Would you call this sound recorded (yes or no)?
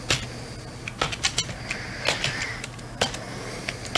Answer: yes